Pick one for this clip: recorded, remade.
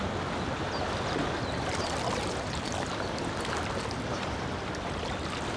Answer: recorded